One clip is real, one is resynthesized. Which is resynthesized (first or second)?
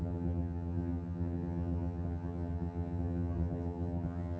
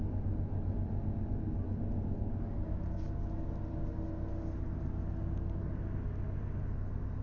first